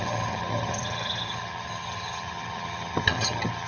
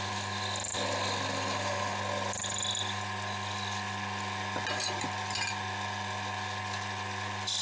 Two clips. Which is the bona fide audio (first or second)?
second